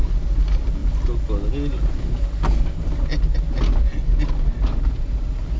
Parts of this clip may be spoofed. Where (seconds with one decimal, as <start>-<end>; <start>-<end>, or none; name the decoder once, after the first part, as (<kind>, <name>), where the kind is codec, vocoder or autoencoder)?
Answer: none